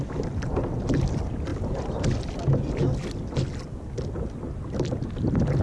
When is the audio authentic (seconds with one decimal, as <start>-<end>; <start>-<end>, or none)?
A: 0.0-5.6